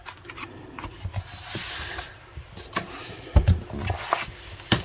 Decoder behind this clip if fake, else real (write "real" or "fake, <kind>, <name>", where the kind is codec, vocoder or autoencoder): real